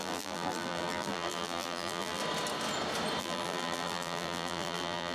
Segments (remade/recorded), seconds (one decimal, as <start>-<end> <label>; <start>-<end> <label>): 0.0-2.2 remade; 2.2-3.2 recorded; 3.2-5.1 remade